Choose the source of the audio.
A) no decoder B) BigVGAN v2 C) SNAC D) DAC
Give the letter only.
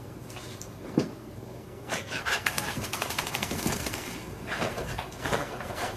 C